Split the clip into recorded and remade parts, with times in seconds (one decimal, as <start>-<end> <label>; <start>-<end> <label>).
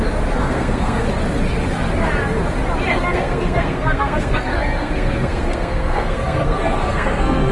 0.0-0.4 recorded; 0.4-1.1 remade; 1.1-2.9 recorded; 2.9-7.5 remade